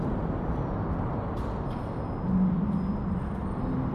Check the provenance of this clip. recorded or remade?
recorded